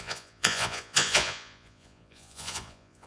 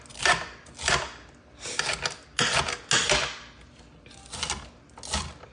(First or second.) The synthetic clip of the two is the first